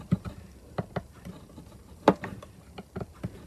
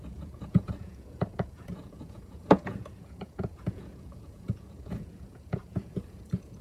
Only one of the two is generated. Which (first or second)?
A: second